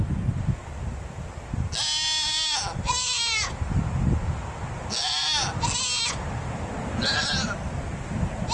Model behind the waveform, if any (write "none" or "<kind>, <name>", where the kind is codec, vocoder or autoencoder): none